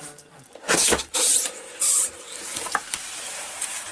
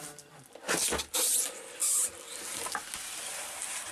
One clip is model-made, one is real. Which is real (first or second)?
second